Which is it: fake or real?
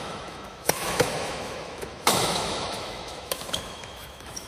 fake